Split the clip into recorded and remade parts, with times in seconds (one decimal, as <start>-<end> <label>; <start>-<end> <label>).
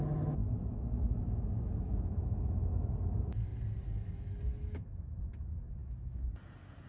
0.0-0.4 recorded; 0.4-2.9 remade; 2.9-4.5 recorded; 4.5-5.2 remade; 5.2-5.8 recorded; 5.8-6.3 remade; 6.3-6.9 recorded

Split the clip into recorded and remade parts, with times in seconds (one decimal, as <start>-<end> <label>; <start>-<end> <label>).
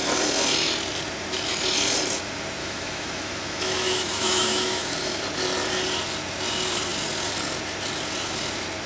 0.0-2.6 recorded; 2.6-5.2 remade; 5.2-8.9 recorded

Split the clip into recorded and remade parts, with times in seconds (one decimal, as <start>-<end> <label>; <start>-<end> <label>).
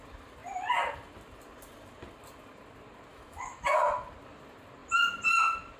0.0-3.1 recorded; 3.1-3.8 remade; 3.8-5.8 recorded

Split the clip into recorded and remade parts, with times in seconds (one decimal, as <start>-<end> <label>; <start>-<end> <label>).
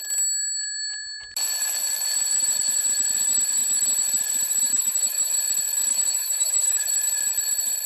0.0-4.7 recorded; 4.7-5.3 remade; 5.3-5.9 recorded; 5.9-6.9 remade; 6.9-7.9 recorded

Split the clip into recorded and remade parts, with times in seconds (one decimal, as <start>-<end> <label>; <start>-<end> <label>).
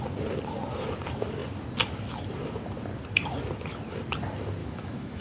0.0-4.6 recorded; 4.6-5.2 remade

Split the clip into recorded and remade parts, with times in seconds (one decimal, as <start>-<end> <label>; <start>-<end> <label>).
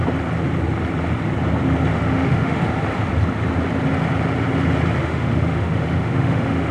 0.0-1.9 recorded; 1.9-2.6 remade; 2.6-5.0 recorded; 5.0-6.7 remade